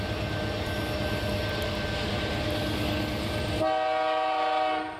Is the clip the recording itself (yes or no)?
yes